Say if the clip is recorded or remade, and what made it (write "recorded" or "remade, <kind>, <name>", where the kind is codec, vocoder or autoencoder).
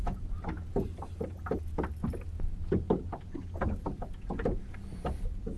recorded